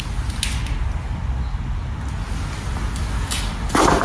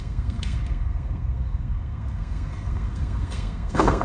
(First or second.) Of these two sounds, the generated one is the second